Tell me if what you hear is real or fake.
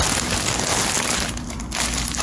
real